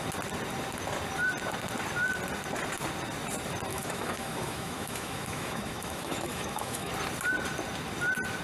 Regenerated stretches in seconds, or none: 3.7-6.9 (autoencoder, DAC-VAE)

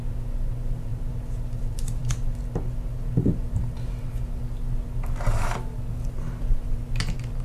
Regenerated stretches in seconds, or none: none